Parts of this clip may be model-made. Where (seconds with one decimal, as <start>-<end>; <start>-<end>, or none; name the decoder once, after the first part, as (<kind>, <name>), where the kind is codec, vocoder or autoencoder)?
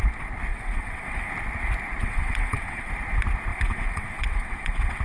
0.5-1.3 (vocoder, WaveNeXt); 2.0-2.9; 3.5-5.0